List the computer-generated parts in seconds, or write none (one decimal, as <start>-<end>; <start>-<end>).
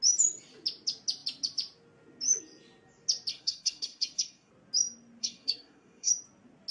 3.3-4.5; 5.2-6.1